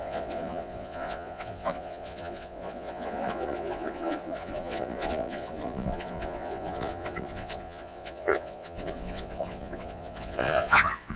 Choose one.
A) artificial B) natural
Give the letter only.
A